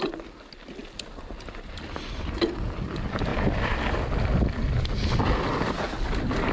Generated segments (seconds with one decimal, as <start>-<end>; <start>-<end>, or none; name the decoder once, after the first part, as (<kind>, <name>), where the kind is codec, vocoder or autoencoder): none